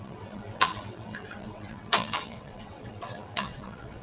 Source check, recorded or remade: remade